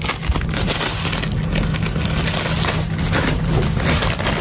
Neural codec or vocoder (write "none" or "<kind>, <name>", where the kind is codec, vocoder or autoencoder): none